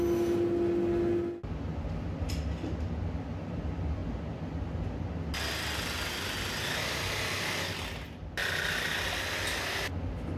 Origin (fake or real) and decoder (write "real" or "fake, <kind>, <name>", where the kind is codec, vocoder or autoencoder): real